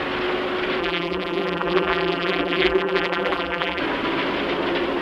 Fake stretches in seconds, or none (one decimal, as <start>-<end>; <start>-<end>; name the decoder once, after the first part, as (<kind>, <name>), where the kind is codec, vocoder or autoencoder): 0.8-3.8 (vocoder, BigVGAN v2)